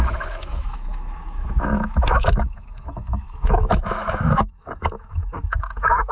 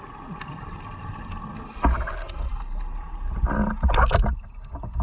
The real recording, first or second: second